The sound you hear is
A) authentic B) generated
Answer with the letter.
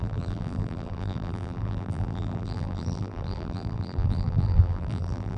B